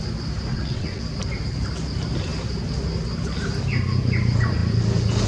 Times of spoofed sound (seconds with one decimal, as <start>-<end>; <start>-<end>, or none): 0.5-1.0

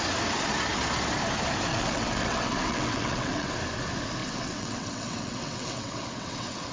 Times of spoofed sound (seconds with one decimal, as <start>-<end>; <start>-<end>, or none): 1.7-3.5; 4.2-6.7

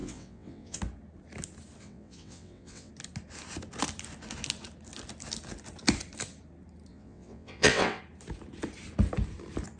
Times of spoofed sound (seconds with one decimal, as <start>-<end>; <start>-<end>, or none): 0.0-0.8; 1.8-2.9; 6.9-8.0